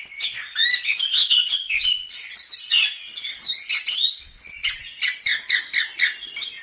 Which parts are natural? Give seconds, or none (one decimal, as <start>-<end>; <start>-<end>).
0.0-1.2; 5.2-6.6